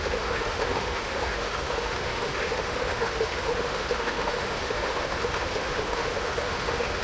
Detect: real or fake fake